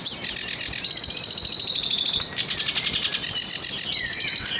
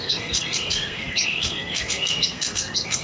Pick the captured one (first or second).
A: first